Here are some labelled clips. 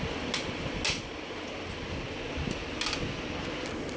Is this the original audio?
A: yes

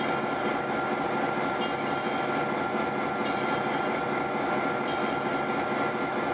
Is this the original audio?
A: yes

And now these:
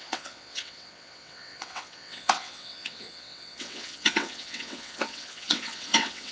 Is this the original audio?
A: no